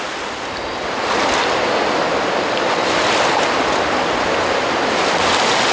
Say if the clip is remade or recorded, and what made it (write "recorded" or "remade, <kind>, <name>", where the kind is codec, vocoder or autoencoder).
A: recorded